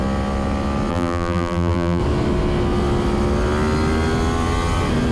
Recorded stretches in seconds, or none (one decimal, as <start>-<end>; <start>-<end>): 0.0-0.9; 2.0-5.1